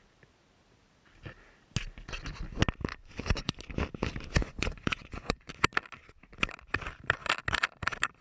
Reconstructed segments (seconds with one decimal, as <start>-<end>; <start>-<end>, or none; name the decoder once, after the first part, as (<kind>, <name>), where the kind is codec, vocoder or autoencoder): 2.9-3.6 (vocoder, Vocos); 4.4-5.5